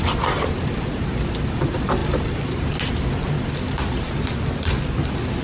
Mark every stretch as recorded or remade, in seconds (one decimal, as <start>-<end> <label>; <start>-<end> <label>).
0.0-5.4 recorded